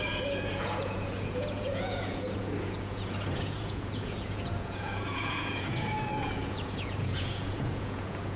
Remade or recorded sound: remade